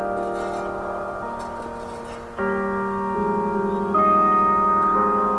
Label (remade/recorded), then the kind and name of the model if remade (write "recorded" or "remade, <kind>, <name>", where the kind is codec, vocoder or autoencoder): recorded